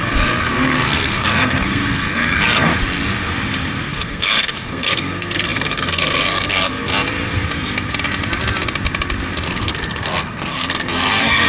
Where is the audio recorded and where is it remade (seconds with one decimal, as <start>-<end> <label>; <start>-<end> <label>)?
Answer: 0.0-2.7 remade; 2.7-3.9 recorded; 3.9-6.9 remade; 6.9-9.5 recorded; 9.5-11.5 remade